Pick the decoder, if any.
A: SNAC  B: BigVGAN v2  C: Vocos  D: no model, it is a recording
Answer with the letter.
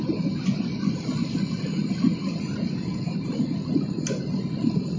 D